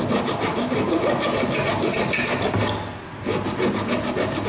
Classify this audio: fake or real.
real